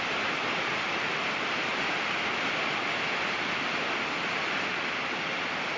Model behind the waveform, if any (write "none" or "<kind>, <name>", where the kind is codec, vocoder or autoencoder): none